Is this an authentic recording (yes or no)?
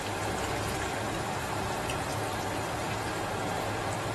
no